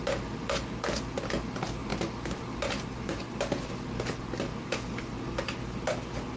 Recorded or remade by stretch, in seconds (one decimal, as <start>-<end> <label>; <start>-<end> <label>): 0.0-6.4 recorded